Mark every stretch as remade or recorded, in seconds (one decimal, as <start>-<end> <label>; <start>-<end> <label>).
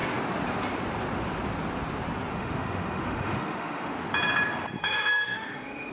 0.0-2.3 recorded; 2.3-3.9 remade; 3.9-4.8 recorded; 4.8-5.9 remade